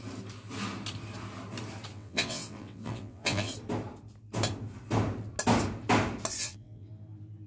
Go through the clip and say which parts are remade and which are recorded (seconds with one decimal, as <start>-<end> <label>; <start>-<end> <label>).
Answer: 0.0-1.9 recorded; 1.9-3.5 remade; 3.5-6.4 recorded; 6.4-6.9 remade; 6.9-7.5 recorded